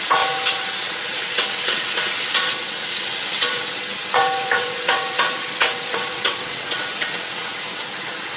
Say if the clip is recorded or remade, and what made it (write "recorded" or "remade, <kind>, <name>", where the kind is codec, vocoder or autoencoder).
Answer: remade, vocoder, WaveNeXt